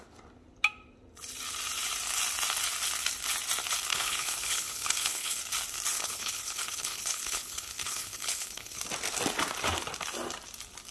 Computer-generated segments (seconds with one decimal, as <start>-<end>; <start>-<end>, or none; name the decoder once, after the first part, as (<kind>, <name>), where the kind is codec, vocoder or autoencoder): 3.9-5.4 (codec, HILCodec); 5.9-8.8